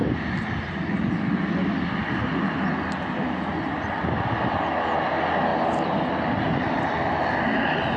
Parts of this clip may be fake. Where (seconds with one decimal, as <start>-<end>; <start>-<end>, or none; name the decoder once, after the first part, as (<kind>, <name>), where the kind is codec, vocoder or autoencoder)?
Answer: none